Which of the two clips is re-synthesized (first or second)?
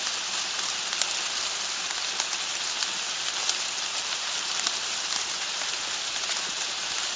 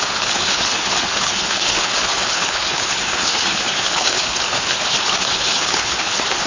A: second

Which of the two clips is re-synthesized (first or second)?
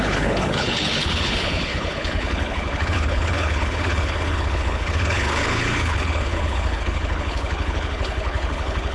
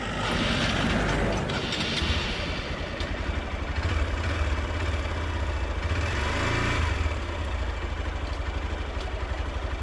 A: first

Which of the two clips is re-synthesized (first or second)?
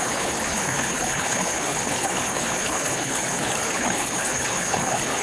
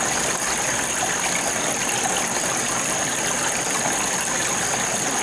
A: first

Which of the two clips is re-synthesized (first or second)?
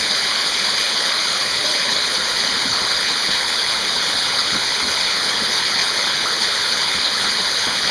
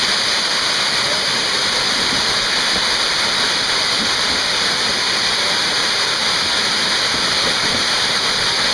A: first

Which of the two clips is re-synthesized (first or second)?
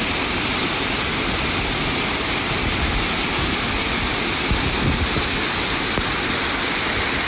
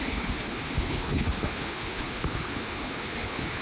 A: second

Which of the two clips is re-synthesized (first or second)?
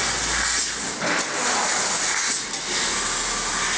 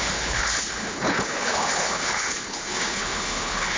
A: second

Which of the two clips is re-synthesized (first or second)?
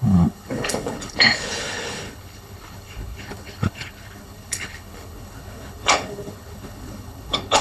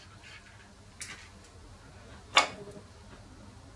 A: first